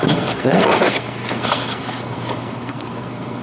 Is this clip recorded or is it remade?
remade